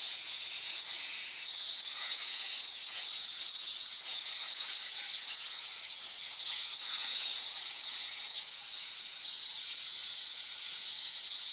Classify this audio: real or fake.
fake